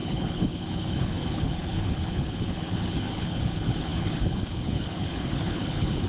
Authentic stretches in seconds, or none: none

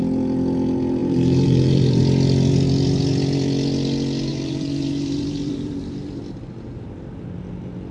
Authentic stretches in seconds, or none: 0.0-1.0; 2.0-4.3; 6.2-7.9